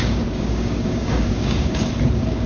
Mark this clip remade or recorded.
remade